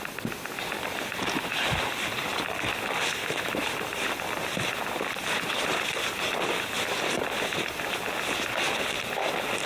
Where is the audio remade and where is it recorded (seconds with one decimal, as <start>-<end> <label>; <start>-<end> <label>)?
0.0-2.3 recorded; 2.3-7.5 remade; 7.5-9.7 recorded